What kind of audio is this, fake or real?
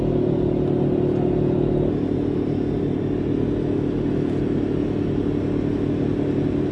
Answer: real